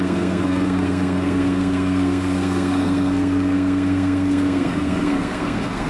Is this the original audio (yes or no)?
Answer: no